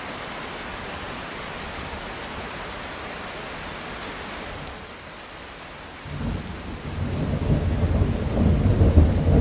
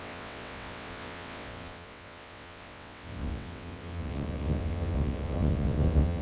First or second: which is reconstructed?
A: second